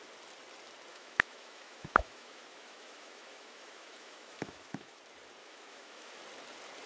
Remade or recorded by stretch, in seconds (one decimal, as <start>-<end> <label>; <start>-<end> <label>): 0.0-0.9 recorded; 0.9-5.0 remade; 5.0-5.4 recorded; 5.4-6.2 remade; 6.2-6.9 recorded